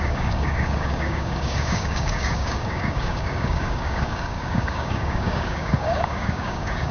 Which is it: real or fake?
fake